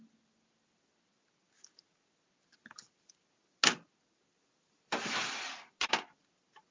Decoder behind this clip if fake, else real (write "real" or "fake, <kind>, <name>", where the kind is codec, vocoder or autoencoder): real